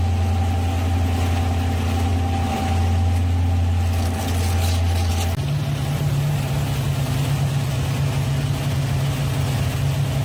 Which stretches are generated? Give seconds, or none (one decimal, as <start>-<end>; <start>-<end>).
none